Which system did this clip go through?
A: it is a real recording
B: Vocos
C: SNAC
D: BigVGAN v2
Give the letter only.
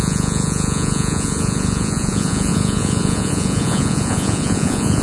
B